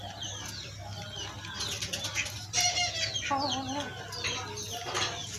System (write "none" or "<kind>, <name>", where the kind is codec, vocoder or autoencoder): none